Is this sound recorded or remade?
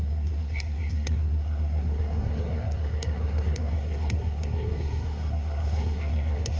remade